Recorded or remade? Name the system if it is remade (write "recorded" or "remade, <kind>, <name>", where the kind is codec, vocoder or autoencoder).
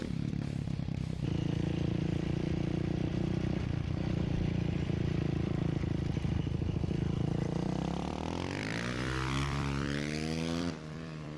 remade, vocoder, BigVGAN v2